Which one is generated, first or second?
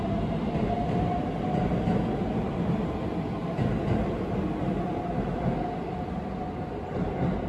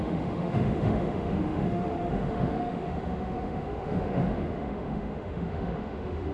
second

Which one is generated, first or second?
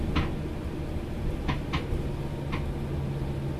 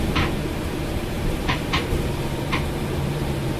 second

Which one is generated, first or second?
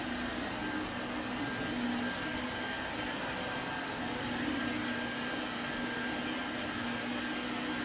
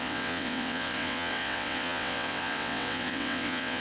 second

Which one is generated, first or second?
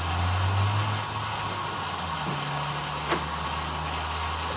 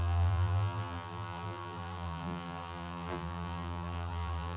second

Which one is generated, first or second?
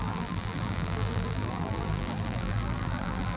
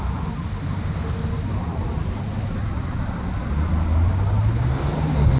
first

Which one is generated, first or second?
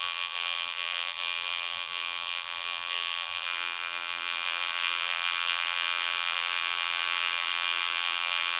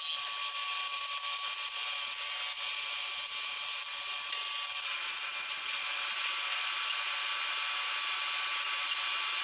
first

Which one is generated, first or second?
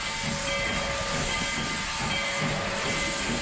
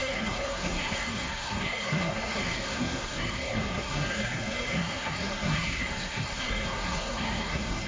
second